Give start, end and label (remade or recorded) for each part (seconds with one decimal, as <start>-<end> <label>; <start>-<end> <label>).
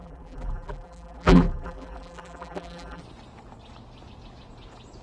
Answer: 0.0-3.0 remade; 3.0-5.0 recorded